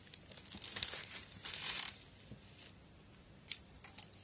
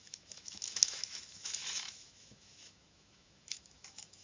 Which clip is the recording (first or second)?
first